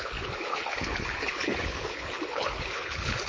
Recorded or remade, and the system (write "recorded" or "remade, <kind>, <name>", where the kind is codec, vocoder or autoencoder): remade, codec, HILCodec